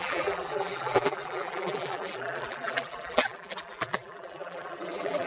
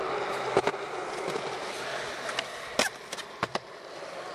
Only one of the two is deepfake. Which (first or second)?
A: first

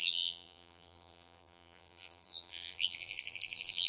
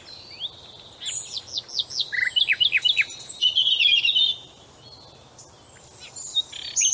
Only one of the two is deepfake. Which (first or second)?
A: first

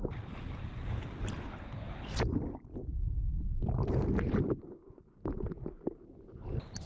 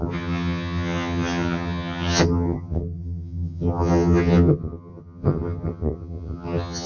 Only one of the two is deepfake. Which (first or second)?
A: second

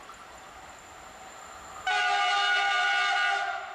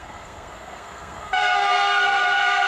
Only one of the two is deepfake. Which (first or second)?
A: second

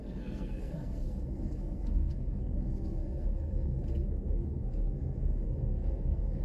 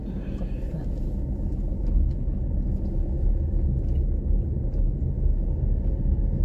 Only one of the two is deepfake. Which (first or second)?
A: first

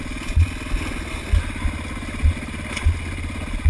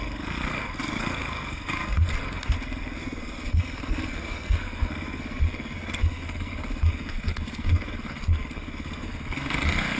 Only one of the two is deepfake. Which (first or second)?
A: second